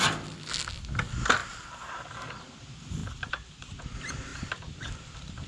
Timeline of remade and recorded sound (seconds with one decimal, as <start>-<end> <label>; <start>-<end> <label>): 0.0-3.0 recorded; 3.0-3.7 remade; 3.7-4.3 recorded; 4.3-5.5 remade

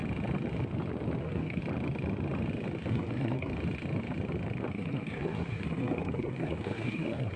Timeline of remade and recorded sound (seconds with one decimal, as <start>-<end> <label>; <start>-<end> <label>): 0.0-1.2 recorded; 1.2-1.6 remade; 1.6-2.9 recorded; 2.9-3.5 remade; 3.5-4.7 recorded; 4.7-7.4 remade

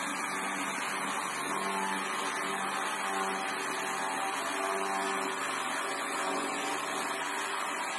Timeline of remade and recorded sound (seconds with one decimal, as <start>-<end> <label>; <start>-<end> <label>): 0.0-5.8 recorded; 5.8-6.7 remade; 6.7-8.0 recorded

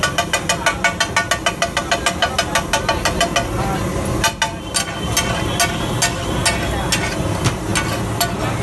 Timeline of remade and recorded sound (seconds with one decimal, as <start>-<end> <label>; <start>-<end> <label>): 0.0-8.6 recorded

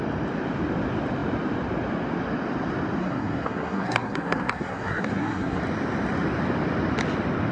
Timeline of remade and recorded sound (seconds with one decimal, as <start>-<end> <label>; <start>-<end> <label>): 0.0-3.0 recorded; 3.0-5.6 remade; 5.6-7.5 recorded

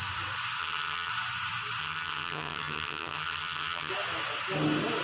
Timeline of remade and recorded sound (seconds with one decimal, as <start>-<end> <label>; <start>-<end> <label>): 0.0-0.6 recorded; 0.6-1.1 remade; 1.1-1.8 recorded; 1.8-3.9 remade; 3.9-5.0 recorded